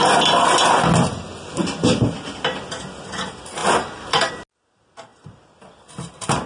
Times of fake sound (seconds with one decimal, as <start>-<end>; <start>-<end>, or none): 3.6-4.3; 5.1-6.5